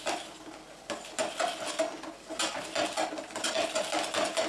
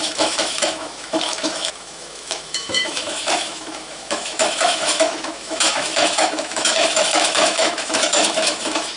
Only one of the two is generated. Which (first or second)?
second